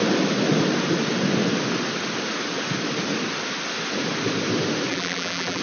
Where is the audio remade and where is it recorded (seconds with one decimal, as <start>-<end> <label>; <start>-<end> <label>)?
0.0-4.9 recorded; 4.9-5.6 remade